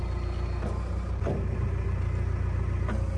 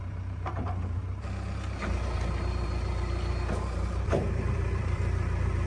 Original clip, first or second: first